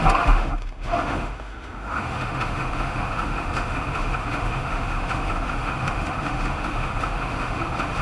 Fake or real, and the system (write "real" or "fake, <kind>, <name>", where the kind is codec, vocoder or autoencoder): fake, autoencoder, DAC-VAE